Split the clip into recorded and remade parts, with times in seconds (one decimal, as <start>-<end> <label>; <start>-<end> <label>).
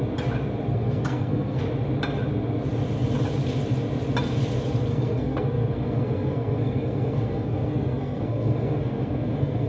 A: 0.0-0.7 recorded; 0.7-1.6 remade; 1.6-4.9 recorded; 4.9-9.7 remade